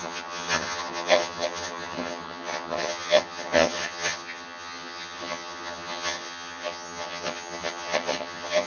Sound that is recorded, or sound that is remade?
remade